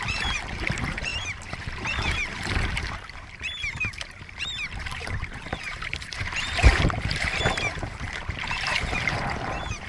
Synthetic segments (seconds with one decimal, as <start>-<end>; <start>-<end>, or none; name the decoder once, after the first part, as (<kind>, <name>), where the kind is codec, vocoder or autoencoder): 0.0-9.9 (vocoder, BigVGAN v2)